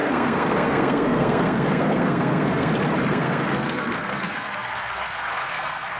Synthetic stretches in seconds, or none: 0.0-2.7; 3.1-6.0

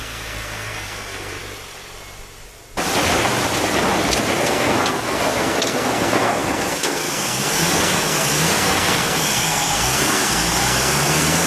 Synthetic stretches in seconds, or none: 0.0-1.4; 4.4-11.5

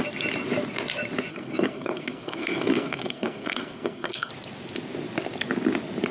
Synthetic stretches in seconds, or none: 1.3-4.3

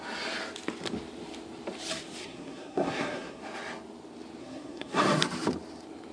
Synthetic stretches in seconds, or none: 2.2-3.4; 4.4-5.0

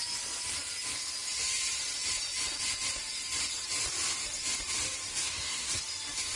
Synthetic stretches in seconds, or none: 5.1-5.8

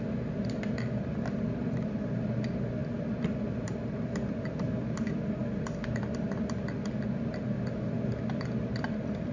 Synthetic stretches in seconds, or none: none

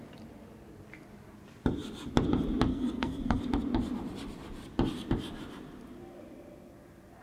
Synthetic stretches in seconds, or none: 2.7-3.4

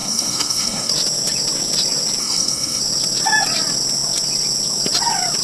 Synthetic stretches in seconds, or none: 0.0-0.9; 2.2-2.8